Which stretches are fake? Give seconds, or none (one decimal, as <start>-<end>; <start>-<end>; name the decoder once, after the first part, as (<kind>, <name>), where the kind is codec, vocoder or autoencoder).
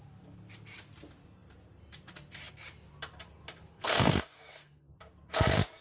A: 3.7-4.9 (codec, SNAC)